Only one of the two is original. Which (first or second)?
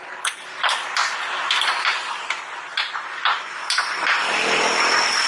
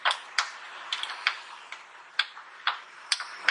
first